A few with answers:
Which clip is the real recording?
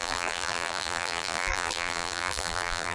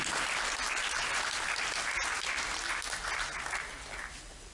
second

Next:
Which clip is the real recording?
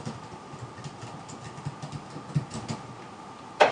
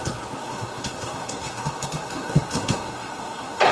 first